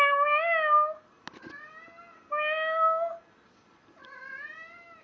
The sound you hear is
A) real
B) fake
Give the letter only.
A